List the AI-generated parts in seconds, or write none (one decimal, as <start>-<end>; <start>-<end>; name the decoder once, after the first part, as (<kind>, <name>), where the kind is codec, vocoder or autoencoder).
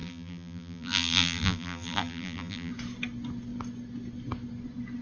0.0-2.7 (vocoder, BigVGAN v2)